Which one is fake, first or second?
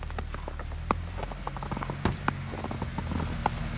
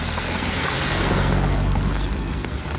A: second